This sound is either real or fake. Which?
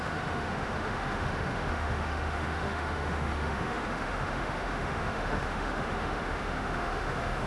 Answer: fake